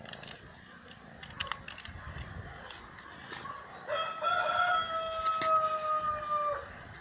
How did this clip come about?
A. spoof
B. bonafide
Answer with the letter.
B